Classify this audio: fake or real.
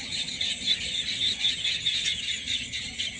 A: fake